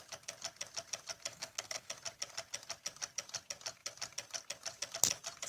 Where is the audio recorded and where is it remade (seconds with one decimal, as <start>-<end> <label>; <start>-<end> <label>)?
0.0-1.3 recorded; 1.3-1.9 remade; 1.9-5.5 recorded